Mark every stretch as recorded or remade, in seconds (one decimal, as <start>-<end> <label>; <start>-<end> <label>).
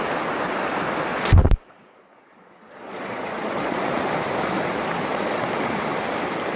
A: 0.0-1.1 recorded; 1.1-4.0 remade; 4.0-5.1 recorded; 5.1-5.7 remade; 5.7-6.6 recorded